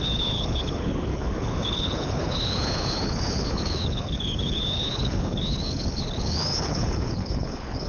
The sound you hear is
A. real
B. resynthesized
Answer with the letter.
B